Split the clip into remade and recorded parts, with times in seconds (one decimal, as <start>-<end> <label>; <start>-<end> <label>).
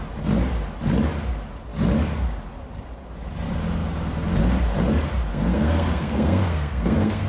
0.0-5.3 recorded; 5.3-7.3 remade